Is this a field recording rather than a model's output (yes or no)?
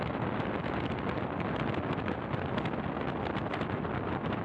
yes